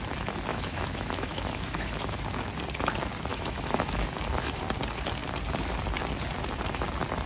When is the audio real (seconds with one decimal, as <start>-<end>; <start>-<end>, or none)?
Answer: 0.0-0.5; 2.2-3.3; 4.6-7.3